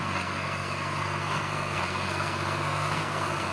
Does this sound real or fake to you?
fake